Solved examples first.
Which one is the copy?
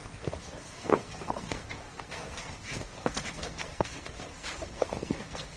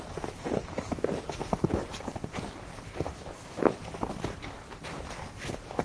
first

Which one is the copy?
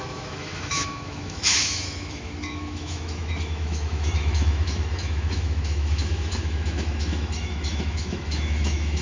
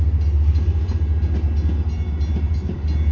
first